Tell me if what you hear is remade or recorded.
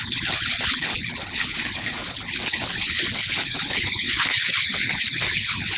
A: remade